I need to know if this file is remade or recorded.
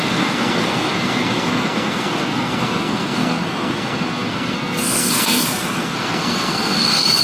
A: remade